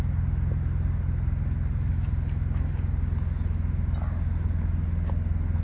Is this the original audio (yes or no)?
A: yes